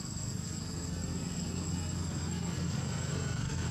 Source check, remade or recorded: remade